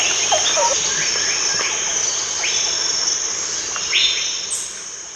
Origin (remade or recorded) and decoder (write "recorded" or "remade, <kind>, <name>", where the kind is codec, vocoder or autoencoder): recorded